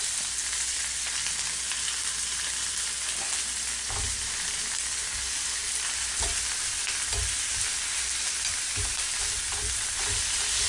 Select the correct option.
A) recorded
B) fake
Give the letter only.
A